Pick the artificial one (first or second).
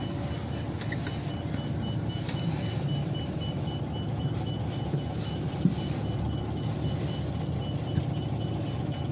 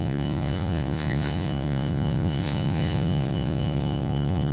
second